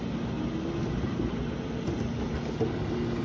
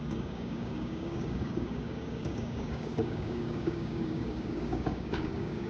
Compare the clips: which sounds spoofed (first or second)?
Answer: second